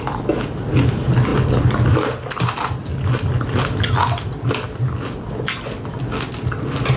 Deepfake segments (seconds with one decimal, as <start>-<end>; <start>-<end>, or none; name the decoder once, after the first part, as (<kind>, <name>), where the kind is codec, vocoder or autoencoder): none